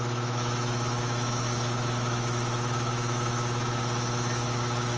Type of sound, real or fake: fake